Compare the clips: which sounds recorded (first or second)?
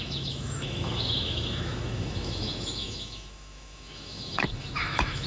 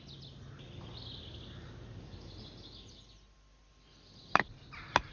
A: second